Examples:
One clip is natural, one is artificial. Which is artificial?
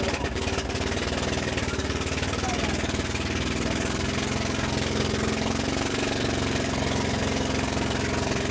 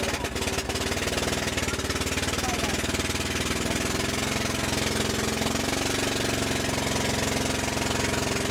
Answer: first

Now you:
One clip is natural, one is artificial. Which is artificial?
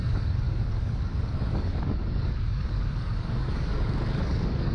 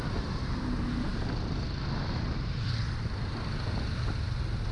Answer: first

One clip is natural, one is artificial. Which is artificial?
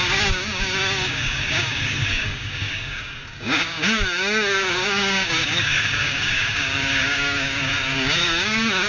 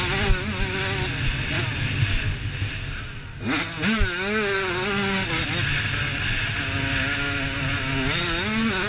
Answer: first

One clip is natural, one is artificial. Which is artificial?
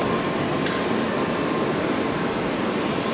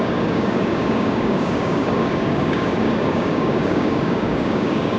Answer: second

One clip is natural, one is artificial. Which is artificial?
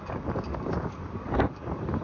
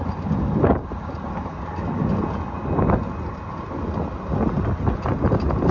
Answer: first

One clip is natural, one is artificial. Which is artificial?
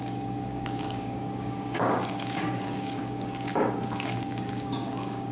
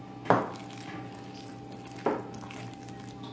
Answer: first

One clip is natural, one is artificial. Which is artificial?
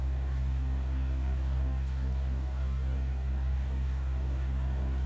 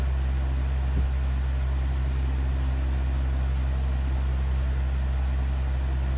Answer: first